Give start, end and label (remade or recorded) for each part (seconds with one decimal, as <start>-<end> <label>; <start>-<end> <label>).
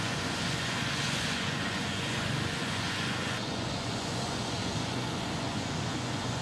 0.0-6.4 remade